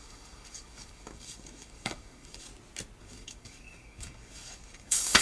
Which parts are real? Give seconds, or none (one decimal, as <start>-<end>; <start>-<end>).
2.5-3.0